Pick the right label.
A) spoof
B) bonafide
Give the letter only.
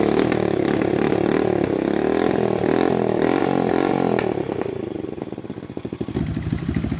B